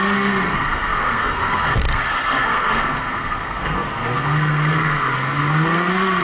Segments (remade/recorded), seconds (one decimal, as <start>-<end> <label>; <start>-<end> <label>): 0.0-6.2 remade